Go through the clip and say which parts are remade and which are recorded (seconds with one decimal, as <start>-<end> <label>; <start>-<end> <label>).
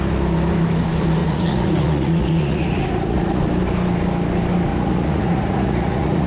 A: 0.0-1.2 recorded; 1.2-3.4 remade; 3.4-4.7 recorded; 4.7-6.3 remade